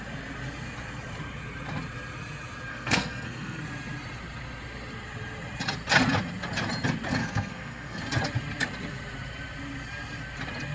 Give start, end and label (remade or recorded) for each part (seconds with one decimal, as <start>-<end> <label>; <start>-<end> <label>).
0.0-2.7 recorded; 2.7-3.6 remade; 3.6-7.2 recorded; 7.2-8.0 remade; 8.0-10.7 recorded